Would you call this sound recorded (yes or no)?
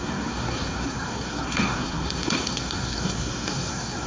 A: no